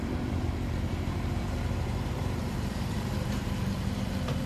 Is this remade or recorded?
remade